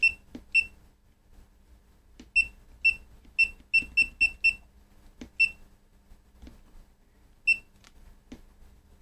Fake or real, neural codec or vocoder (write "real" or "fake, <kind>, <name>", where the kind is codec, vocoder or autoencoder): real